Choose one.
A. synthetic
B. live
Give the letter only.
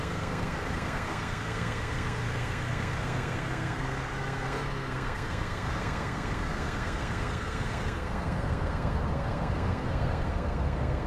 A